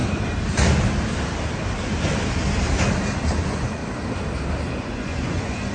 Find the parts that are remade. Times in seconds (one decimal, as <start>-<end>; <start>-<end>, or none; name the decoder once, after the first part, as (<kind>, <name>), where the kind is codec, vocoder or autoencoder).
3.4-3.8 (vocoder, Vocos); 4.8-5.7